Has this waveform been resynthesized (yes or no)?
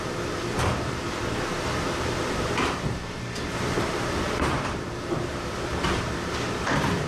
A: yes